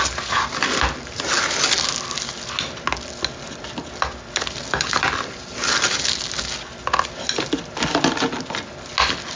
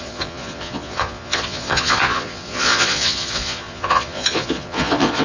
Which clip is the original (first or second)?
first